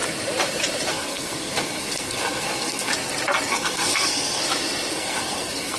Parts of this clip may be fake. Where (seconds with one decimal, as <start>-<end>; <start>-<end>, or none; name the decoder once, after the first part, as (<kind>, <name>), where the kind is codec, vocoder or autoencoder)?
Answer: 0.9-2.9 (codec, SNAC); 3.5-4.4; 4.9-5.8

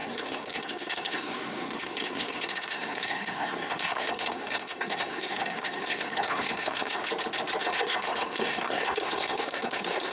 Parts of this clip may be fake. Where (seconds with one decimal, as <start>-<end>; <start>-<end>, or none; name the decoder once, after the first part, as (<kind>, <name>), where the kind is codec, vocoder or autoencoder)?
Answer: 0.0-7.0 (codec, SNAC); 7.6-10.1

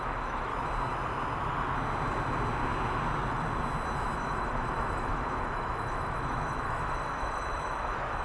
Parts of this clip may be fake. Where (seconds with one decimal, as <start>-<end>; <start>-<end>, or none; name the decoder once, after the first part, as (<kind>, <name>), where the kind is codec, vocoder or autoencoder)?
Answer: 0.0-0.5 (autoencoder, DAC-VAE); 4.2-8.2

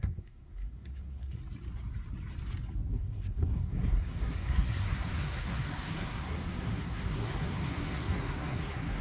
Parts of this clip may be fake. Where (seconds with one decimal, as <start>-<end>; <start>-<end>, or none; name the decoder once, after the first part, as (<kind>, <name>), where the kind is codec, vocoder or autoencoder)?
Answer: 0.0-1.4 (codec, SNAC); 2.9-9.0